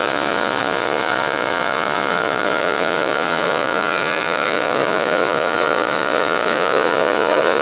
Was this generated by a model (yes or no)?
yes